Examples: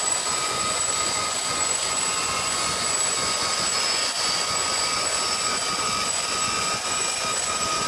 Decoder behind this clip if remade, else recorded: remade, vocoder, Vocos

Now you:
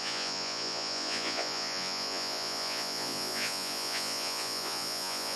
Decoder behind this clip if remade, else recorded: remade, vocoder, Vocos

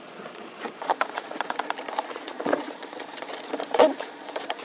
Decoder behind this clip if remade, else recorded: remade, vocoder, Vocos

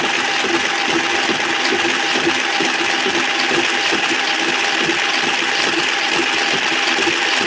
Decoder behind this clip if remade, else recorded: recorded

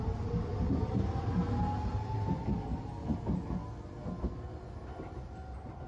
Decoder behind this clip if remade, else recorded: recorded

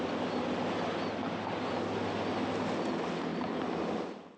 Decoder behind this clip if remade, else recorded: recorded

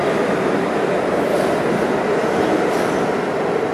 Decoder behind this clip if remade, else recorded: recorded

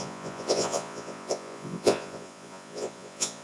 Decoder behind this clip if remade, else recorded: remade, vocoder, Vocos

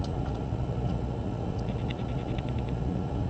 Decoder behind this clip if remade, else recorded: remade, vocoder, Vocos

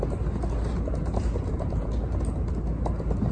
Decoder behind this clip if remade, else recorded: recorded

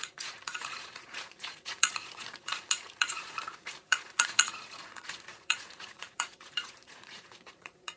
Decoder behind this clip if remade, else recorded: remade, vocoder, Vocos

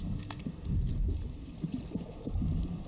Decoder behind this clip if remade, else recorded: recorded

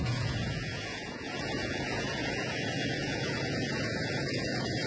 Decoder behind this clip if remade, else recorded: remade, vocoder, Vocos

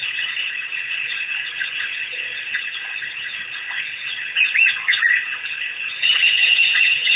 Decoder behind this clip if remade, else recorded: remade, vocoder, Vocos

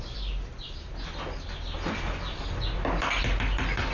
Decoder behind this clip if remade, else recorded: recorded